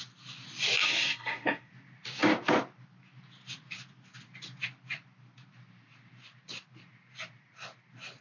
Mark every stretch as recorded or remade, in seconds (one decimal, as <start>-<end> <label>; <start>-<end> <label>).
0.0-0.8 recorded; 0.8-1.7 remade; 1.7-8.2 recorded